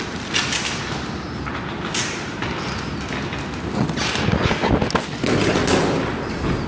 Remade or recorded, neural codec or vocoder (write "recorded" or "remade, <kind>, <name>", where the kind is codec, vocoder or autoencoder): recorded